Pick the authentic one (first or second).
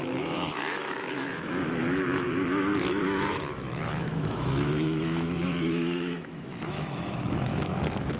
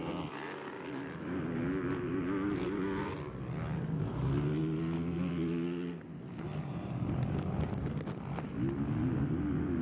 second